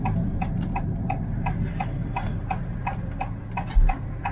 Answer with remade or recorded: recorded